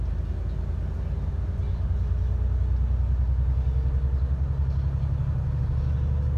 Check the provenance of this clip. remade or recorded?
recorded